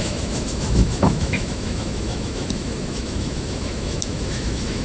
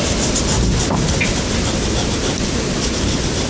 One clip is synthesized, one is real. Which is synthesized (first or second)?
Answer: first